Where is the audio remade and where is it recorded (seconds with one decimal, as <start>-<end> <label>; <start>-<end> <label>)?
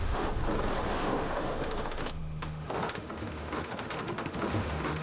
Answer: 0.0-0.4 remade; 0.4-0.9 recorded; 0.9-5.0 remade